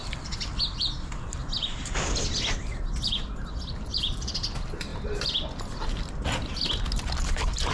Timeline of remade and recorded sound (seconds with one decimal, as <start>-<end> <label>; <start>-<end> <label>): 0.0-0.6 recorded; 0.6-1.4 remade; 1.4-3.1 recorded; 3.1-4.9 remade; 4.9-7.0 recorded; 7.0-7.7 remade